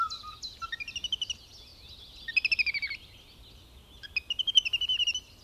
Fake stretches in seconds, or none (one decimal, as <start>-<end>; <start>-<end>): none